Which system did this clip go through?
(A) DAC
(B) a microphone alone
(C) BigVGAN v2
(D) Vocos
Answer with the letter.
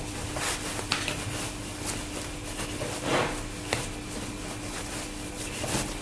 B